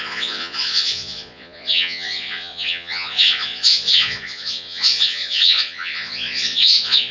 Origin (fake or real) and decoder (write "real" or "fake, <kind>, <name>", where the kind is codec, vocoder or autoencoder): fake, vocoder, Vocos